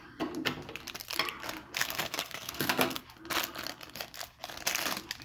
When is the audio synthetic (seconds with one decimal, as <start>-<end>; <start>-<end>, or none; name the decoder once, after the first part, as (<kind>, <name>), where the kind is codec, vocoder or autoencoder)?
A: 1.8-3.0 (codec, SNAC)